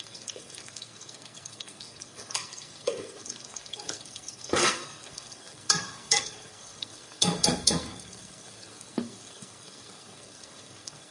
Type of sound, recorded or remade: remade